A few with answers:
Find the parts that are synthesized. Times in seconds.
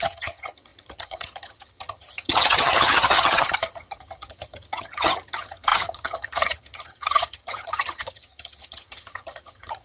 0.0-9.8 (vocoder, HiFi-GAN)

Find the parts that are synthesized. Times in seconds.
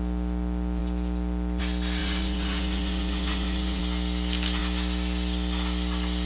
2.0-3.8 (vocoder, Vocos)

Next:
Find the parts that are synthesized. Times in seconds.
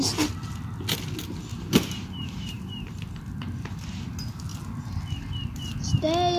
1.5-4.0 (vocoder, BigVGAN v2)